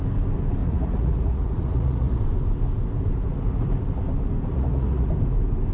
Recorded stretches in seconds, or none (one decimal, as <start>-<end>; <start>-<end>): 0.0-0.6; 2.2-4.5; 5.1-5.7